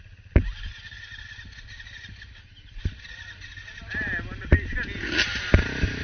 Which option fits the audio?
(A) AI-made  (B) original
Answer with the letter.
B